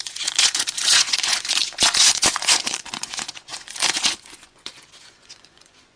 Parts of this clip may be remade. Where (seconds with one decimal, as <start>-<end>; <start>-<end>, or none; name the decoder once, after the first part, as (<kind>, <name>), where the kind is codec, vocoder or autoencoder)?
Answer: 0.0-6.0 (vocoder, Vocos)